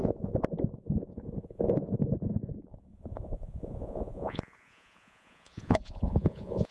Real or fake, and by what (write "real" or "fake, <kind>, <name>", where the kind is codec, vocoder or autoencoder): fake, vocoder, Vocos